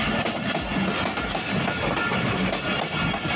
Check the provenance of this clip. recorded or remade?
recorded